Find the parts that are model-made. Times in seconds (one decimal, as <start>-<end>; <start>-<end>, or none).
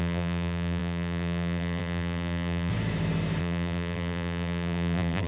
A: 0.0-2.7; 3.4-5.3